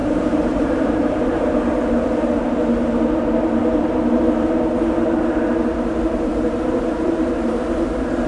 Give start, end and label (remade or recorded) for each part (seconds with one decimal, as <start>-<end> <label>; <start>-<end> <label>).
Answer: 0.0-1.2 remade; 1.2-6.3 recorded; 6.3-7.5 remade; 7.5-8.3 recorded